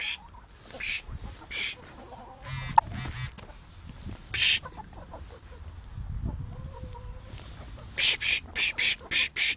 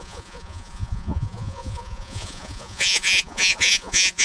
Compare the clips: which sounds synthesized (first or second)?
second